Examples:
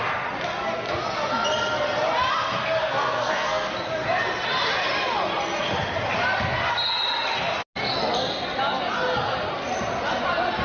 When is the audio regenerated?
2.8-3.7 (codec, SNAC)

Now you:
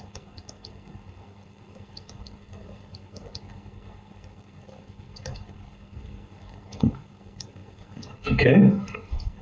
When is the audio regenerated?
0.0-9.4 (codec, SNAC)

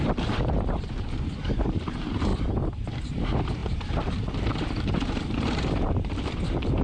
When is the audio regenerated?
0.0-2.3 (vocoder, BigVGAN v2); 3.0-6.8

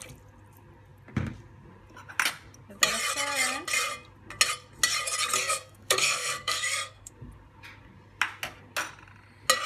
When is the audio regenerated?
5.4-7.1 (codec, SNAC)

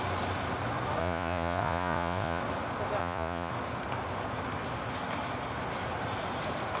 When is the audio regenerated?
1.0-2.4 (vocoder, Vocos); 3.0-3.5

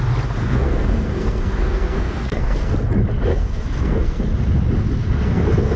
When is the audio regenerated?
0.4-2.7 (codec, SNAC); 3.3-4.2; 5.0-5.8

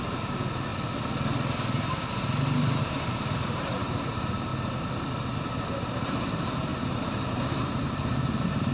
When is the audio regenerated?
0.0-0.7 (vocoder, BigVGAN v2); 2.8-4.5; 5.4-6.7; 7.2-8.7

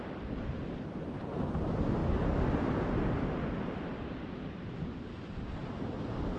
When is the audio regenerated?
none